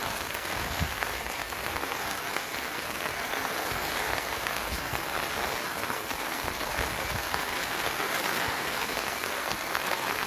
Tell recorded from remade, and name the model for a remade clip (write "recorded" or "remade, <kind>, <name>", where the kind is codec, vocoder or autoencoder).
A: remade, codec, SNAC